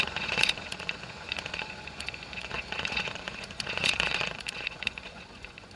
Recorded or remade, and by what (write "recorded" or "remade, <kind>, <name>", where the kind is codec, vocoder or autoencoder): remade, vocoder, Vocos